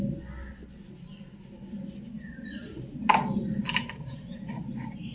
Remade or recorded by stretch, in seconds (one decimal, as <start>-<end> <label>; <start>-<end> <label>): 0.0-5.1 recorded